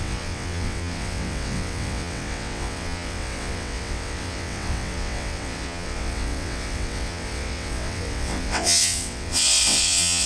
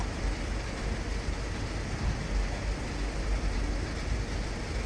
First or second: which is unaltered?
second